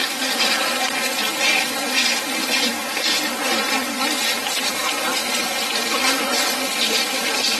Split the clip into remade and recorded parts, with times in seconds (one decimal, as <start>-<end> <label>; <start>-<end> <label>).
0.0-7.6 recorded